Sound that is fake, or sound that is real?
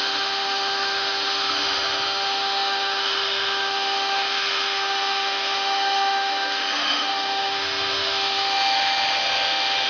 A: fake